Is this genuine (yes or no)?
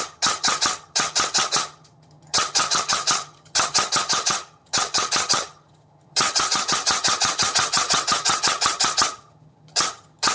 no